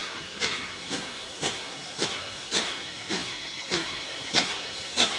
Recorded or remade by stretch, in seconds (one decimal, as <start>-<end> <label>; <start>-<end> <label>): 0.0-5.2 remade